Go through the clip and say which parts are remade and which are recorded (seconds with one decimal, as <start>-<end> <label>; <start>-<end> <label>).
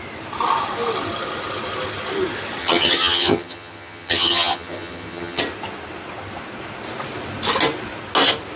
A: 0.0-2.6 recorded; 2.6-5.4 remade; 5.4-8.6 recorded